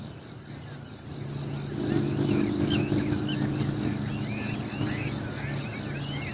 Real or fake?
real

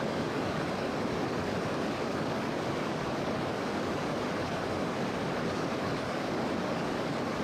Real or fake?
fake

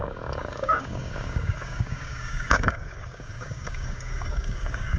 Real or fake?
fake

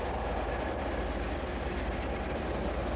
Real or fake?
real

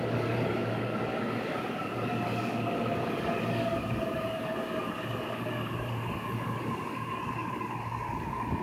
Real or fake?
fake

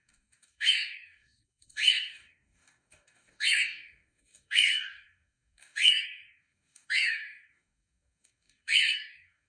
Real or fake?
fake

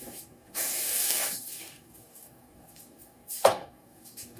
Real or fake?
fake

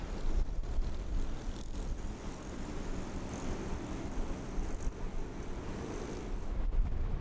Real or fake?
real